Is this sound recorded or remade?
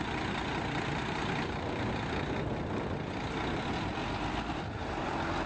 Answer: recorded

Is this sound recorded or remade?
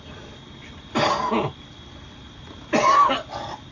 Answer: recorded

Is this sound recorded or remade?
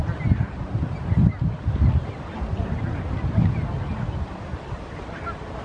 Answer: recorded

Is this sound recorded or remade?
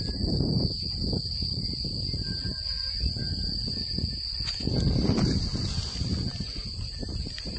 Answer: remade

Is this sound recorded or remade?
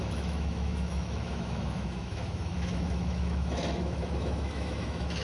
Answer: remade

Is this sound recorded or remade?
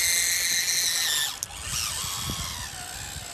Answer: recorded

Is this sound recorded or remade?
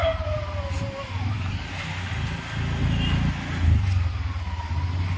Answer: recorded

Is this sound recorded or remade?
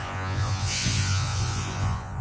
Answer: remade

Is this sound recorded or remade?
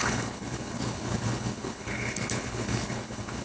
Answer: remade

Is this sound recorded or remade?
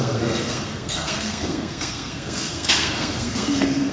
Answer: remade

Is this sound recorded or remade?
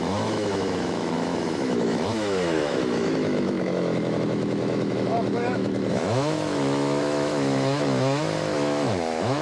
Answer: remade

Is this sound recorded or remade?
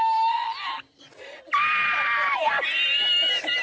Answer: recorded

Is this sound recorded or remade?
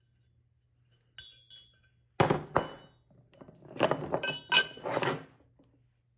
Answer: recorded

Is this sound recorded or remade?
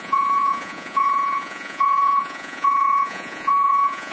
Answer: remade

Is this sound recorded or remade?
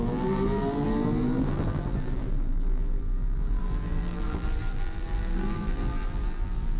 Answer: remade